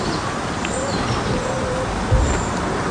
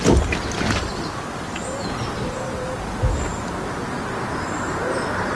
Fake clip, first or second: first